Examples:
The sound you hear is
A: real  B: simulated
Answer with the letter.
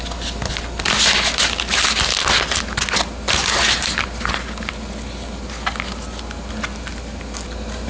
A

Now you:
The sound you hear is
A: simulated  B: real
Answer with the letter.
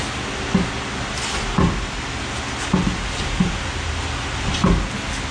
B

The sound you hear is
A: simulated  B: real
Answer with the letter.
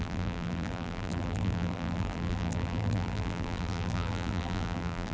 A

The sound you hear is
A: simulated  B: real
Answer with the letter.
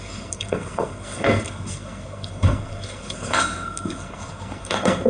A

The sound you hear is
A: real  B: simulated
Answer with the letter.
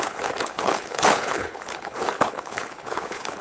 B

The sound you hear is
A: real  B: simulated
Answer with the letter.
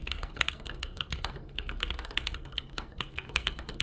B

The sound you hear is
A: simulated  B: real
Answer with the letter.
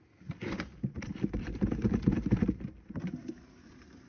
A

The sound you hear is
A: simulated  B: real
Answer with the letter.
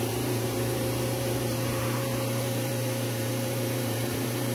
A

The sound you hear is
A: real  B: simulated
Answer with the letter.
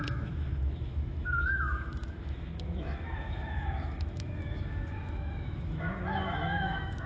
B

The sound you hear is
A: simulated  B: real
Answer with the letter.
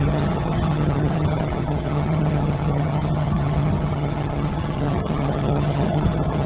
A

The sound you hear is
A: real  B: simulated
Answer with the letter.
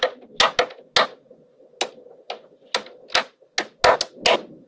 A